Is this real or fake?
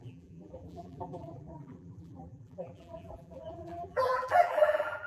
fake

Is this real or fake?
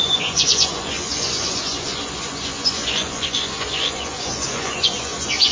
fake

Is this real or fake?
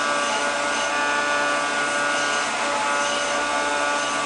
real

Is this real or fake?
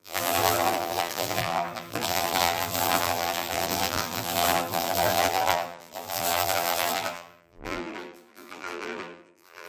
fake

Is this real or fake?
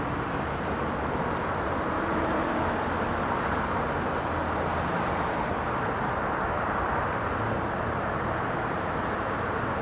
real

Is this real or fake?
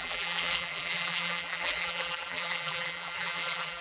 fake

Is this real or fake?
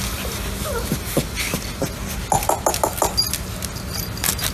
real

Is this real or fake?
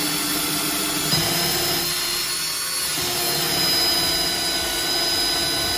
real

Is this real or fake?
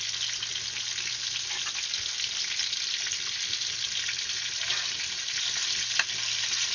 real